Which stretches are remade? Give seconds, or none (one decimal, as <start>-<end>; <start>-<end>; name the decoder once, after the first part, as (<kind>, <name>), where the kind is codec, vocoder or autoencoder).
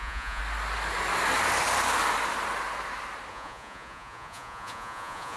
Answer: 0.0-0.4 (vocoder, Vocos); 3.3-5.4